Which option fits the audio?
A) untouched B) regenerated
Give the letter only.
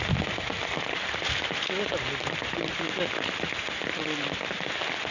A